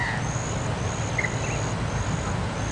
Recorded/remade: recorded